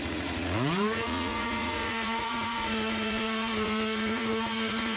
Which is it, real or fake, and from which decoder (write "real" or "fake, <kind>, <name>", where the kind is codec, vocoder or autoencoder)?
fake, vocoder, Vocos